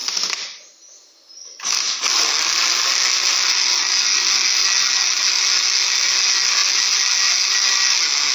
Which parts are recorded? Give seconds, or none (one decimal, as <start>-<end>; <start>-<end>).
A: 0.0-8.3